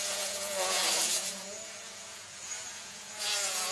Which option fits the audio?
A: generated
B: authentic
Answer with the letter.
A